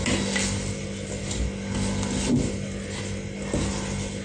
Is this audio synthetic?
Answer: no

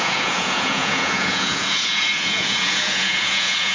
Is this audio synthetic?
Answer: yes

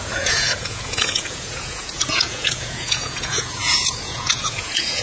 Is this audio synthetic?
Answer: yes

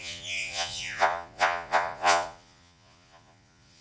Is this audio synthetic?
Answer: yes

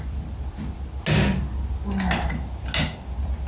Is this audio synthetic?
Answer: no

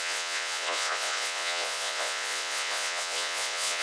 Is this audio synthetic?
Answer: yes